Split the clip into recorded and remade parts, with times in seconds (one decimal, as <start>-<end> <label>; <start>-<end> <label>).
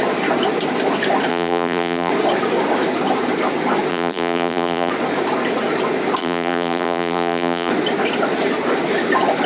0.0-1.3 recorded; 1.3-2.1 remade; 2.1-3.9 recorded; 3.9-4.9 remade; 4.9-6.2 recorded; 6.2-7.7 remade; 7.7-9.5 recorded